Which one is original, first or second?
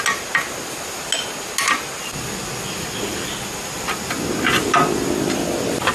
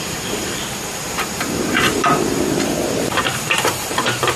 first